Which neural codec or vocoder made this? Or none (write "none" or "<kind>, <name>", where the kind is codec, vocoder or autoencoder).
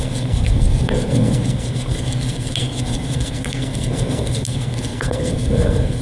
codec, SNAC